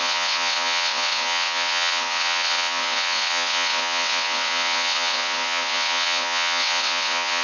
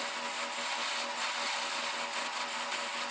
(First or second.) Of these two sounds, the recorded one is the second